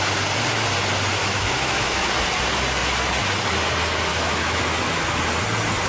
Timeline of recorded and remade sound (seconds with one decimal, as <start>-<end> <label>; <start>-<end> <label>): 0.0-1.2 recorded; 1.2-2.1 remade; 2.1-4.1 recorded; 4.1-4.6 remade; 4.6-5.9 recorded